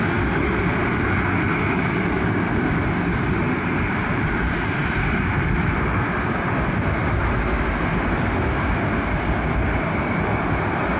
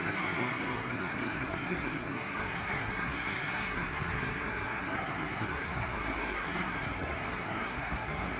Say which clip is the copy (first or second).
second